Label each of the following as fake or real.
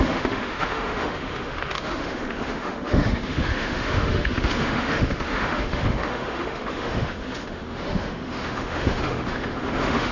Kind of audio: fake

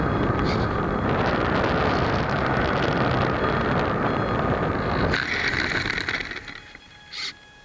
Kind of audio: real